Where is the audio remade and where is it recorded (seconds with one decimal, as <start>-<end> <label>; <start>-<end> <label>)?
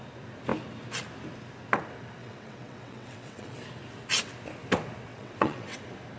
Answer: 0.0-2.2 recorded; 2.2-3.6 remade; 3.6-5.1 recorded; 5.1-5.8 remade; 5.8-6.2 recorded